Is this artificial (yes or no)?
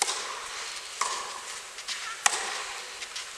no